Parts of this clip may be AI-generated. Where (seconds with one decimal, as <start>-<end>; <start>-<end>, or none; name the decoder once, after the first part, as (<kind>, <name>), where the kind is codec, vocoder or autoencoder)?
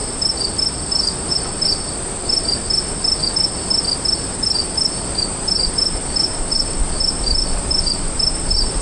none